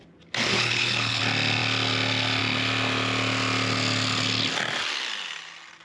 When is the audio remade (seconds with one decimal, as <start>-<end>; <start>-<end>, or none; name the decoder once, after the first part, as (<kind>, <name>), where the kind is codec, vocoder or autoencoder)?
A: 0.5-1.2 (codec, HILCodec)